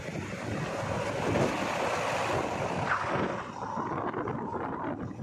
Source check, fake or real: real